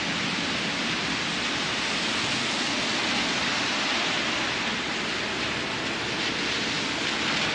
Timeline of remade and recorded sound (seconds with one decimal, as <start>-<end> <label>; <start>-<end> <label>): 0.0-7.5 recorded